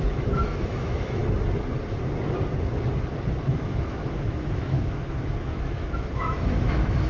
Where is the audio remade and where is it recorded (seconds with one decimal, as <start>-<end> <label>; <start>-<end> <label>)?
0.0-1.2 remade; 1.2-3.4 recorded; 3.4-7.1 remade